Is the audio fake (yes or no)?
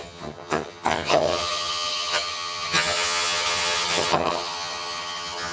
yes